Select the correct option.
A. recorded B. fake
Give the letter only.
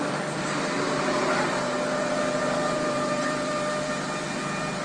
B